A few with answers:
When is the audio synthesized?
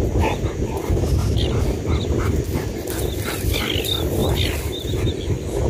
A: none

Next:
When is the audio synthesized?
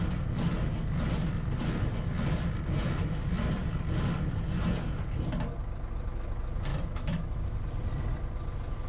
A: 6.7-7.6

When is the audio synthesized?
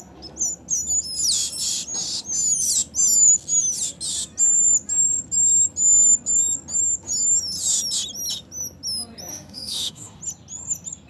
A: 9.3-10.2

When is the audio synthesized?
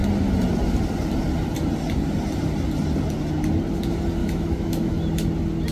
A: 4.2-4.9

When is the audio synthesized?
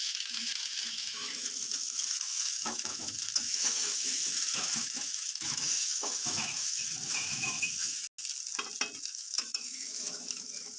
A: 0.0-8.0; 9.0-10.8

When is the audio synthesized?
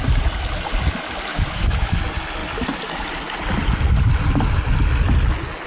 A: 1.3-1.9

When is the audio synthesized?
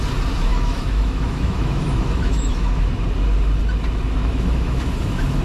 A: 0.5-2.9; 4.2-5.4